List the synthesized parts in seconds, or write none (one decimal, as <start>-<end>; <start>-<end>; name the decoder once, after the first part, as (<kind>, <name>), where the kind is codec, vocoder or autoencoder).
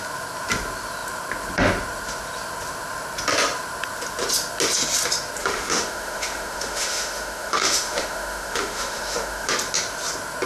5.4-9.5 (autoencoder, DAC-VAE)